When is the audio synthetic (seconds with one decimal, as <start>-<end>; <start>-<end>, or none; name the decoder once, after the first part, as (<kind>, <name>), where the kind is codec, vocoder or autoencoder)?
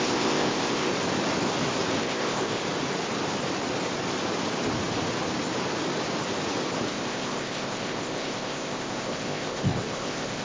0.0-0.9 (codec, ZipCodec); 2.0-2.6; 6.9-10.4